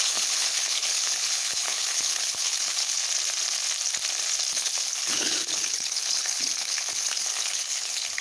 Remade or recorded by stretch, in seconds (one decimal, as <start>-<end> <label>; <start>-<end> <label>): 0.0-3.0 remade; 3.0-4.5 recorded; 4.5-8.2 remade